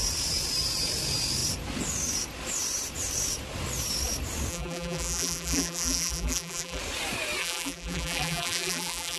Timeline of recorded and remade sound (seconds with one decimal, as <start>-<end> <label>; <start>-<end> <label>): 0.0-4.5 recorded; 4.5-6.8 remade; 6.8-7.4 recorded; 7.4-9.2 remade